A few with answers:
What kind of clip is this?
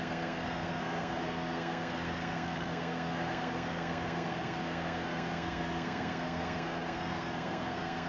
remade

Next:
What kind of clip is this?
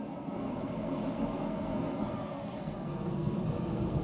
remade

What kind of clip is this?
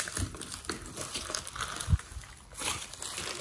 recorded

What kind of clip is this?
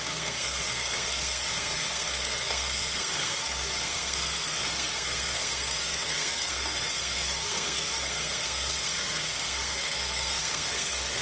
remade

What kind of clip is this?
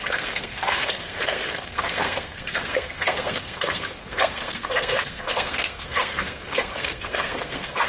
remade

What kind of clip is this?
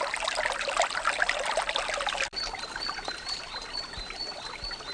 recorded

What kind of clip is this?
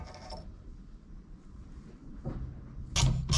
recorded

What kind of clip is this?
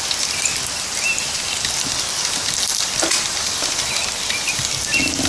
recorded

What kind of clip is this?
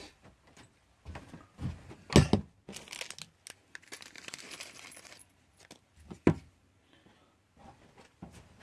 recorded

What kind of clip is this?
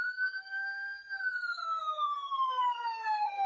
remade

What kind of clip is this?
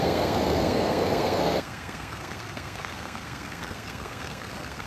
remade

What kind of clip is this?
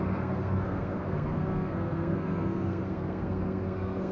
remade